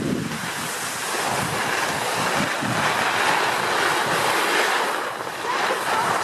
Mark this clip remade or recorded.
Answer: recorded